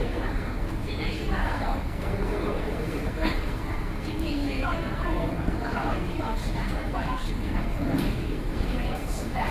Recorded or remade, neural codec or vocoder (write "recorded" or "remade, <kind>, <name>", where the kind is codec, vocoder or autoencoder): remade, codec, SNAC